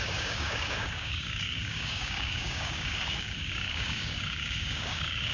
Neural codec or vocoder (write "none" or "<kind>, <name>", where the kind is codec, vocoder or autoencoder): codec, DAC